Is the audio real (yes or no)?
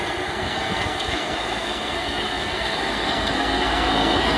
no